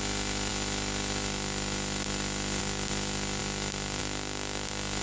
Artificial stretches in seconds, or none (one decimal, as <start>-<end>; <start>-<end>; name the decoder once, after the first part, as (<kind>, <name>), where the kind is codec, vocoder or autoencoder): none